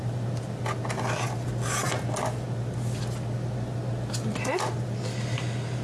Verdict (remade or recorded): recorded